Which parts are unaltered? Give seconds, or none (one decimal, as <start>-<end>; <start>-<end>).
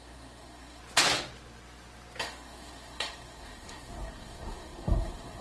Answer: 0.8-2.2